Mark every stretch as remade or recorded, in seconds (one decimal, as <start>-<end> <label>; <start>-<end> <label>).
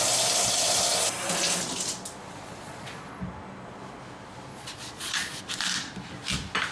0.0-2.2 recorded; 2.2-3.2 remade; 3.2-4.5 recorded; 4.5-5.4 remade; 5.4-6.7 recorded